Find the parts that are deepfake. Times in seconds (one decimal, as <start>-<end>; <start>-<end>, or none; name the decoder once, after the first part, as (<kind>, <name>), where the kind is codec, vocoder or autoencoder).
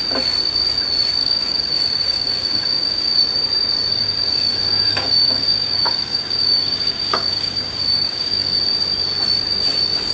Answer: 1.2-3.2 (codec, DAC); 3.9-8.6